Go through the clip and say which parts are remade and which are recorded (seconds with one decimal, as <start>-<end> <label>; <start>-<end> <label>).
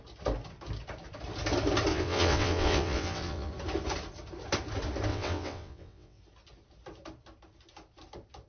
0.0-1.9 recorded; 1.9-3.5 remade; 3.5-5.1 recorded; 5.1-6.2 remade; 6.2-8.5 recorded